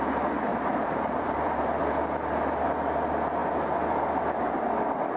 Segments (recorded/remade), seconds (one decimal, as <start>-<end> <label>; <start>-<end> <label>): 0.0-0.5 recorded; 0.5-1.8 remade; 1.8-5.2 recorded